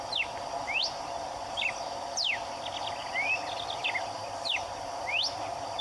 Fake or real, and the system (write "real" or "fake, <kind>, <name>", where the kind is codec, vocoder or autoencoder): real